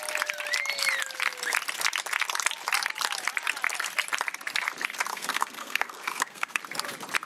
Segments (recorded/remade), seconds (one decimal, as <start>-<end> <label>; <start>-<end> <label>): 0.0-5.1 recorded; 5.1-6.6 remade; 6.6-7.2 recorded